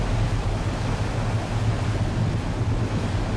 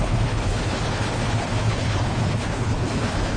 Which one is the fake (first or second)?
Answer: second